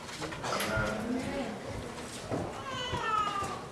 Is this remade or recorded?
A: recorded